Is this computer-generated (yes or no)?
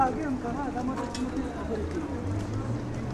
no